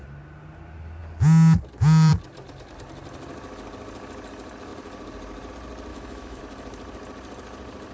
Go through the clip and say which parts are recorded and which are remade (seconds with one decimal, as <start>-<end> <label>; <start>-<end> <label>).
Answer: 0.0-5.9 recorded; 5.9-6.4 remade; 6.4-7.9 recorded